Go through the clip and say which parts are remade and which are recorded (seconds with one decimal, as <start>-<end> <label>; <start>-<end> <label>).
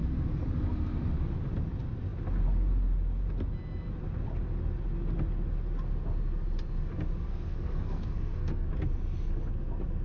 0.0-7.3 recorded; 7.3-8.7 remade; 8.7-10.0 recorded